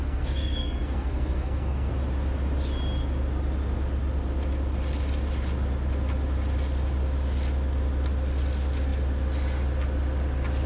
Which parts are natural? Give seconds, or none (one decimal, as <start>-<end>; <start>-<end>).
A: 1.9-10.7